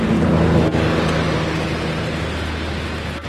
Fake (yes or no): no